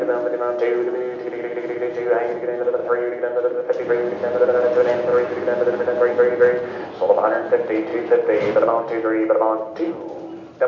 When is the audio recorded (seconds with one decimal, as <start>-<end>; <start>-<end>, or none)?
0.0-7.9; 8.8-10.7